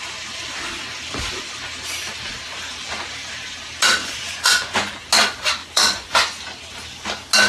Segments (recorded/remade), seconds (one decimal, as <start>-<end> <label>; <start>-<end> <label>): 0.0-4.0 recorded; 4.0-4.9 remade; 4.9-5.6 recorded; 5.6-6.4 remade; 6.4-7.5 recorded